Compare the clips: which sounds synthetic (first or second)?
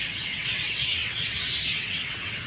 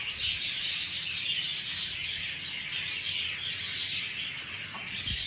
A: first